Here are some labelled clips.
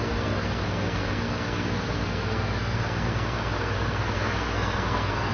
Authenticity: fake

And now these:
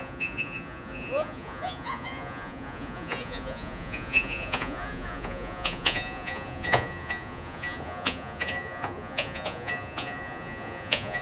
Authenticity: fake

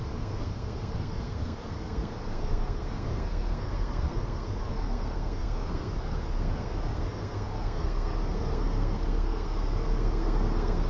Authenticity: fake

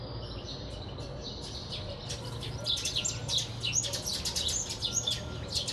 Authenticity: real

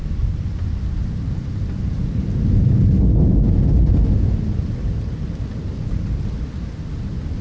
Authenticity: real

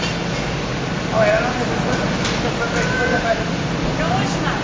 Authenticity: real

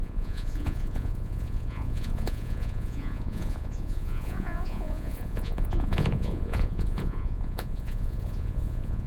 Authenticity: fake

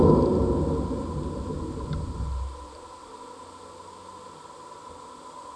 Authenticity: real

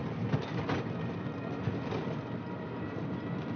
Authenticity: real